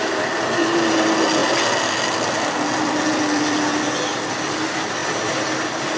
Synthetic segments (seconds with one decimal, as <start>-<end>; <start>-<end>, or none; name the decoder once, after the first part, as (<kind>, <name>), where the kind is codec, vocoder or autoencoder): none